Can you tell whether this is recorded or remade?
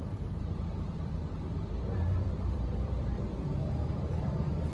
remade